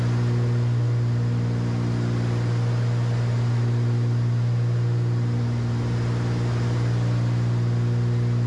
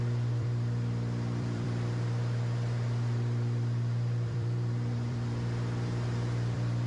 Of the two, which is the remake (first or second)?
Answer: second